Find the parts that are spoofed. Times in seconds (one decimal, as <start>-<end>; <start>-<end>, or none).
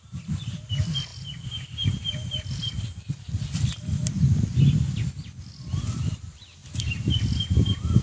0.0-8.0